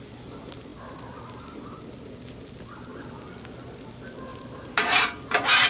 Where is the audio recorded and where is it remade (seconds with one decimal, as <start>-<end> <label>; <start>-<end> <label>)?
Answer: 0.0-4.3 recorded; 4.3-5.7 remade